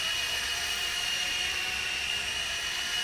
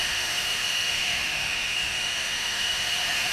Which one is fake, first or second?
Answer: second